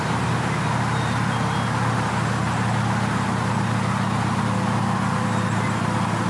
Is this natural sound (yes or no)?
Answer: yes